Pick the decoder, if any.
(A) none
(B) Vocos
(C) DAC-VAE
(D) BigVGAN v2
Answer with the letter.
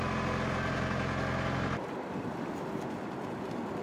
A